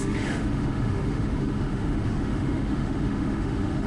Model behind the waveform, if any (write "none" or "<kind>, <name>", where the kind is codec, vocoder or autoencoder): autoencoder, DAC-VAE